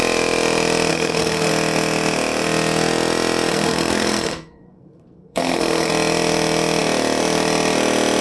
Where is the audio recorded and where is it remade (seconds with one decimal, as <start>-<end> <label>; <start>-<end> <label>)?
0.0-0.9 recorded; 0.9-1.5 remade; 1.5-3.5 recorded; 3.5-5.9 remade; 5.9-8.2 recorded